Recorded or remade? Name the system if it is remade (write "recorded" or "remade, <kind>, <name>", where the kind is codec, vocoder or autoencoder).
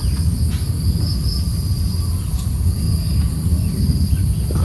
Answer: recorded